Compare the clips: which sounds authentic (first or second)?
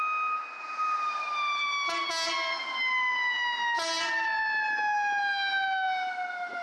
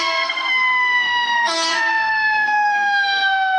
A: first